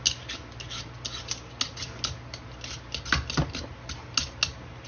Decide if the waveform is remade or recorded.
recorded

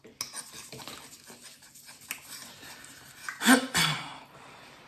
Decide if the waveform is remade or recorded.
recorded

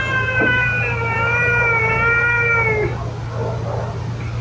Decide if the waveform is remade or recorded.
recorded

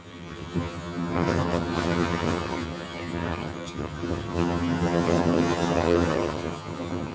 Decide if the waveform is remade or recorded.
remade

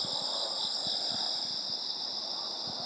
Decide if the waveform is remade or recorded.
recorded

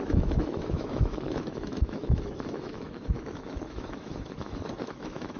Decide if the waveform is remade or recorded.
remade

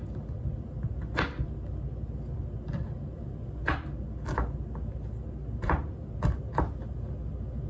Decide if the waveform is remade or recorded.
recorded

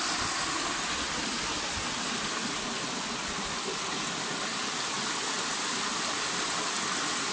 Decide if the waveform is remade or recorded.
recorded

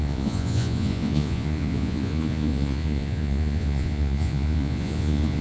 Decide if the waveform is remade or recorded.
remade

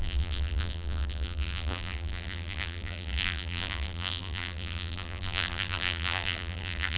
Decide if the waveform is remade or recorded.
remade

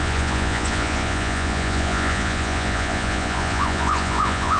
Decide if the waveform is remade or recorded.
remade